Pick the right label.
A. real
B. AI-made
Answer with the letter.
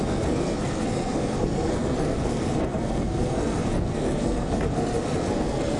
B